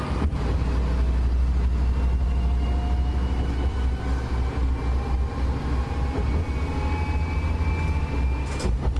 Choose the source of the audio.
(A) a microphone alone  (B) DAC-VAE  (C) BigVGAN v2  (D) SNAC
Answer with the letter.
A